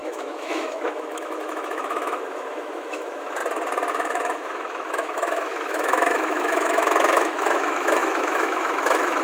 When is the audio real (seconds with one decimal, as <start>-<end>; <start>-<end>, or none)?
3.4-3.9